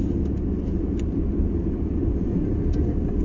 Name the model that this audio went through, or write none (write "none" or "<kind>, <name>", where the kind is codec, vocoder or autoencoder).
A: vocoder, BigVGAN v2